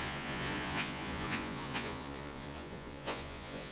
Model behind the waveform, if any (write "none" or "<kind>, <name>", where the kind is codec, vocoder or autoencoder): vocoder, Vocos